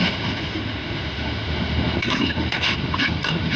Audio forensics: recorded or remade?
remade